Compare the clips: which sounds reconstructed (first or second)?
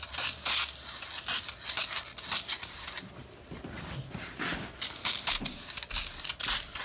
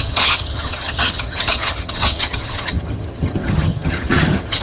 second